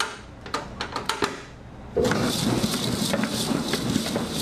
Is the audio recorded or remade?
recorded